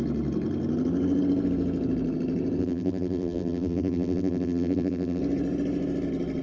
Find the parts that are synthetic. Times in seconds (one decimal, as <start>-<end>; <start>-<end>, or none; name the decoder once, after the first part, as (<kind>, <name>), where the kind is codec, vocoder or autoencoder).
2.6-5.2 (vocoder, BigVGAN v2)